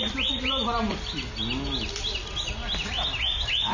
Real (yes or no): yes